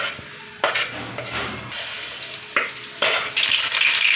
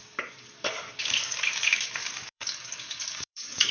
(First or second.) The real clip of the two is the first